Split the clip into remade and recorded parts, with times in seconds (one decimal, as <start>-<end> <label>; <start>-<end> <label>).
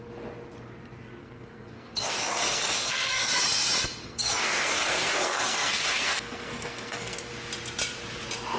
0.0-1.2 recorded; 1.2-3.3 remade; 3.3-4.0 recorded; 4.0-7.3 remade; 7.3-8.6 recorded